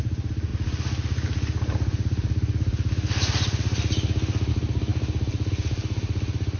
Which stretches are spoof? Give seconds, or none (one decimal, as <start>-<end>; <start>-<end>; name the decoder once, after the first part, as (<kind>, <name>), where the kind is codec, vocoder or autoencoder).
none